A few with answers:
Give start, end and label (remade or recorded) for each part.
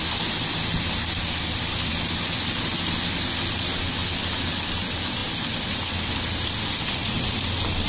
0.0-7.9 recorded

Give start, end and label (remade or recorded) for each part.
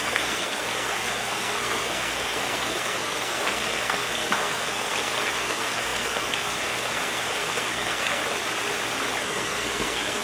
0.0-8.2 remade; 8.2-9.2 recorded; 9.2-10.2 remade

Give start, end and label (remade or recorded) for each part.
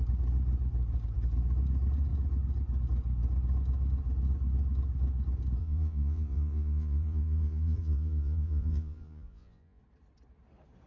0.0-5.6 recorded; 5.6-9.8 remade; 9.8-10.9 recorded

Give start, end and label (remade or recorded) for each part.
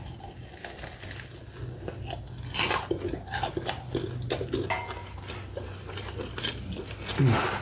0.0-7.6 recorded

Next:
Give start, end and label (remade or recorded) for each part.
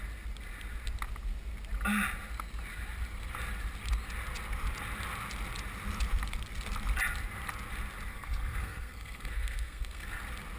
0.0-8.1 recorded; 8.1-10.2 remade; 10.2-10.6 recorded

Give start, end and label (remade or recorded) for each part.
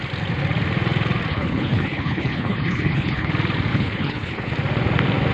0.0-1.3 recorded; 1.3-3.3 remade; 3.3-3.7 recorded; 3.7-4.5 remade; 4.5-5.3 recorded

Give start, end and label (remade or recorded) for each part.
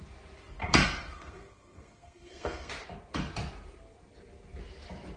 0.0-0.6 recorded; 0.6-2.7 remade; 2.7-5.2 recorded